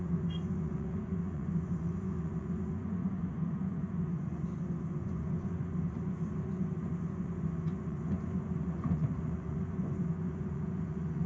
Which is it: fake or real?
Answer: fake